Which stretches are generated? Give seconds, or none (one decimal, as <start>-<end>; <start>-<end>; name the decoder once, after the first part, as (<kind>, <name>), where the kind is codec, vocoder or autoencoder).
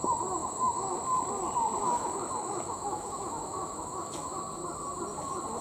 0.4-1.0 (autoencoder, DAC-VAE); 1.8-4.4